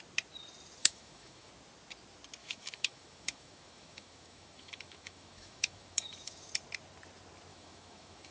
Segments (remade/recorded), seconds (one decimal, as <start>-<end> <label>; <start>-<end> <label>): 0.0-0.8 recorded; 0.8-1.5 remade; 1.5-2.4 recorded; 2.4-6.5 remade; 6.5-7.5 recorded; 7.5-8.3 remade